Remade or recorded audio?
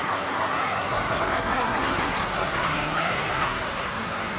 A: remade